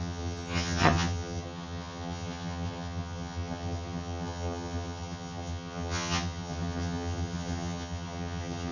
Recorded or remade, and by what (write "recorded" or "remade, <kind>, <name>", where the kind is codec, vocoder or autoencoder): remade, vocoder, HiFi-GAN